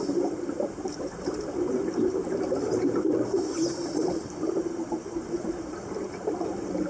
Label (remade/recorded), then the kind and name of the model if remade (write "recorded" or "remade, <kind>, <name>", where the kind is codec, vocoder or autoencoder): remade, vocoder, BigVGAN v2